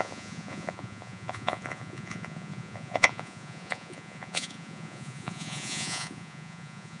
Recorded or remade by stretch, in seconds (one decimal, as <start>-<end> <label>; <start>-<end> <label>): 0.0-7.0 remade